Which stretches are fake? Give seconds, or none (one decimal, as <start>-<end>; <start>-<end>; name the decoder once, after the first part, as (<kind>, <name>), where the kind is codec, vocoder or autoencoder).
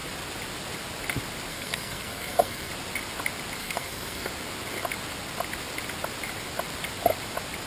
1.5-2.7 (codec, SNAC); 3.6-4.3